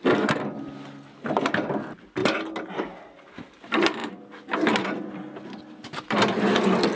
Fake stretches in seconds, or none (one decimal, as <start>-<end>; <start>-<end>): none

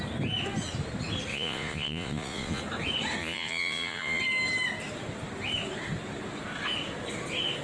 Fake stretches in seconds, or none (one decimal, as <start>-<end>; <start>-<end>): 1.3-2.6; 3.2-4.2

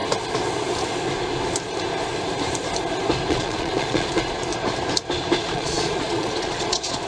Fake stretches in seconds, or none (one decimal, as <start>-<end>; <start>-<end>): 3.3-4.5; 5.4-7.1

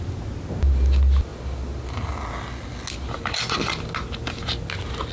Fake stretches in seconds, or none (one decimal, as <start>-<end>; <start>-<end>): none

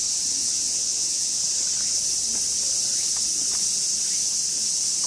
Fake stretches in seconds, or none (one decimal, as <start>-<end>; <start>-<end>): 0.4-1.4

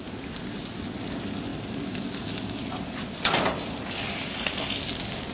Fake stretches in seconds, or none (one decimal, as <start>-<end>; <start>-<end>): none

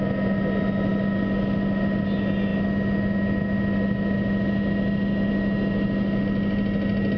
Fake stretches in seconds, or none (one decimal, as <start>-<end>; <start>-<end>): none

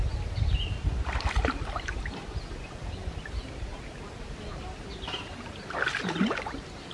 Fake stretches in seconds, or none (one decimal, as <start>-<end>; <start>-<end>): none